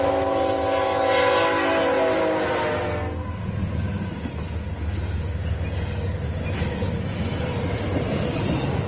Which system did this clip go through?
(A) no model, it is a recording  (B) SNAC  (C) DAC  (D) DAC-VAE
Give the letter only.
A